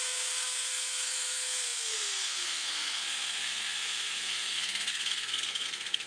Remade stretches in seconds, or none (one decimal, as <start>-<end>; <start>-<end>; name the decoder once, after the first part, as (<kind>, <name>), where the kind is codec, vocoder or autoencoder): 0.0-6.1 (codec, SNAC)